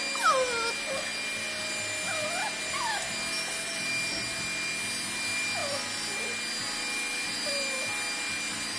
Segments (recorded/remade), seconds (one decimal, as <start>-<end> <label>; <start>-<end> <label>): 0.0-8.8 recorded